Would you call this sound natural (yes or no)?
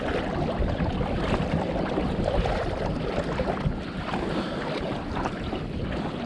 no